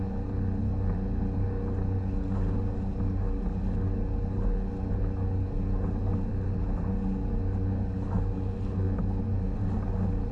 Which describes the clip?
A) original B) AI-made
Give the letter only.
A